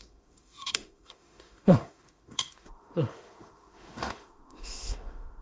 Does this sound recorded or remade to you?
remade